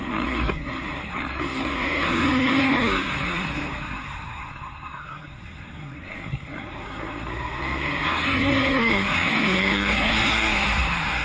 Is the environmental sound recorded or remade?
remade